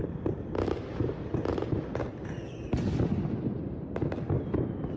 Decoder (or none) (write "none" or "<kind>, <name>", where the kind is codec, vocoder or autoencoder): none